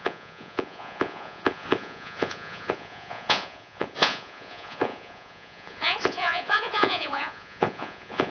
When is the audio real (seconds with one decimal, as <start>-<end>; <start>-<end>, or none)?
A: none